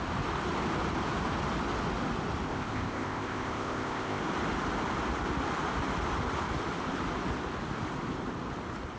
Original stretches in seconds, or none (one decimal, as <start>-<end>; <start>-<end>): 0.0-2.5; 4.2-9.0